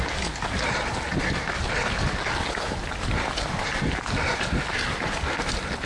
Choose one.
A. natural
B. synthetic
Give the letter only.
A